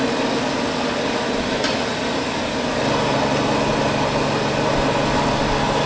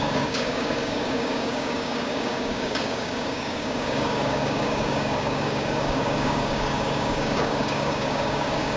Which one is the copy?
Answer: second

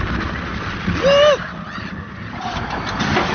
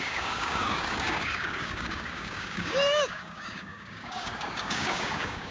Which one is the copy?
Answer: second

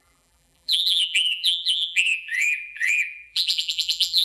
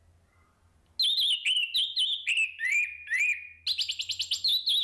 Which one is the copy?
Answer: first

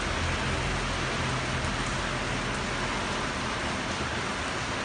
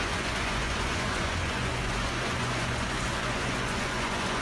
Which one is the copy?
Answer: second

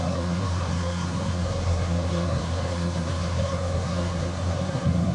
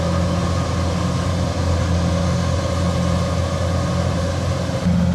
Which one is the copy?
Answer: first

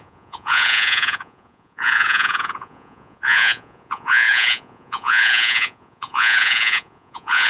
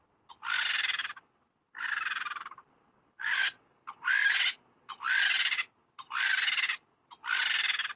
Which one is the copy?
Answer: first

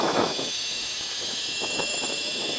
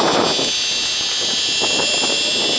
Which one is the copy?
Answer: first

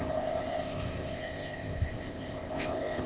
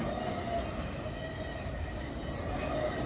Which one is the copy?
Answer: first